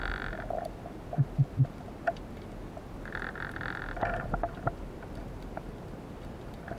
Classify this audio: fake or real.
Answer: real